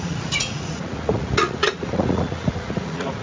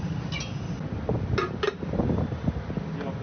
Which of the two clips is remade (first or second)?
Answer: first